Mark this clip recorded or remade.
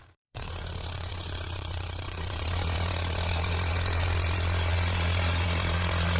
remade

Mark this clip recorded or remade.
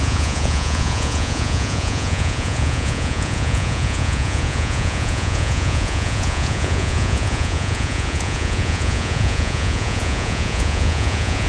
remade